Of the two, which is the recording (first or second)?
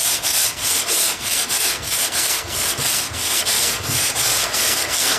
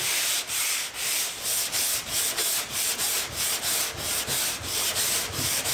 second